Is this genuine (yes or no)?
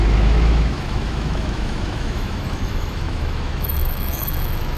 no